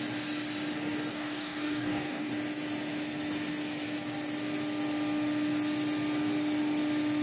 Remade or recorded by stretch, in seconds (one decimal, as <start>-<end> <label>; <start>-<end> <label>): 0.0-1.1 recorded; 1.1-2.3 remade; 2.3-7.2 recorded

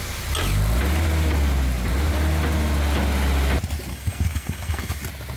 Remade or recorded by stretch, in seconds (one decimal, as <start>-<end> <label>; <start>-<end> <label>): 0.0-3.9 recorded; 3.9-5.0 remade; 5.0-5.4 recorded

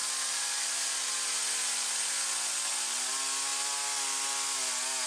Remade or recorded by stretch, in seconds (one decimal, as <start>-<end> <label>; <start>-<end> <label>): 0.0-5.1 recorded

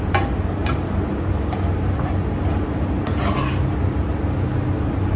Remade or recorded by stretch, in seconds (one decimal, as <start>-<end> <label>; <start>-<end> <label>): 0.0-5.2 recorded

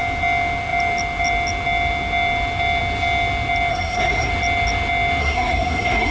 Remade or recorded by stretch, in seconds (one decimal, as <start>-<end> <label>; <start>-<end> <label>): 0.0-3.7 recorded; 3.7-4.3 remade; 4.3-5.2 recorded; 5.2-6.1 remade

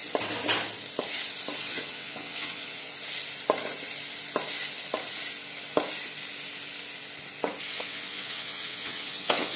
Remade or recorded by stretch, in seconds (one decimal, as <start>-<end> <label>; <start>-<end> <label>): 0.0-1.6 recorded; 1.6-2.9 remade; 2.9-7.7 recorded; 7.7-9.6 remade

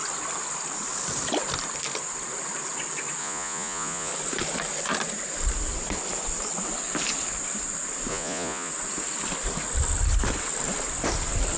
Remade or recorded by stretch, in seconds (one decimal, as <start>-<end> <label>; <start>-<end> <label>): 0.0-3.2 recorded; 3.2-4.1 remade; 4.1-8.1 recorded; 8.1-8.7 remade; 8.7-11.6 recorded